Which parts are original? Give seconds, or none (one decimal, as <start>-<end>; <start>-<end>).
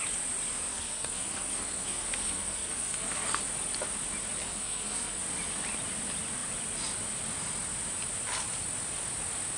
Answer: 0.0-0.7; 3.4-4.4; 5.2-9.6